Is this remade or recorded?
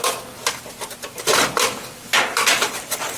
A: recorded